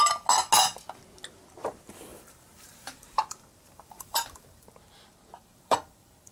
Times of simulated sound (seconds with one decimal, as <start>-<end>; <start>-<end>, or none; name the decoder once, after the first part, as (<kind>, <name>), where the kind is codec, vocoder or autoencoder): 2.1-6.3 (vocoder, BigVGAN v2)